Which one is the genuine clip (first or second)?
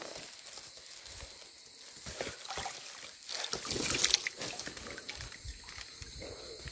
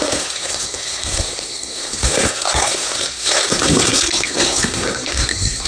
first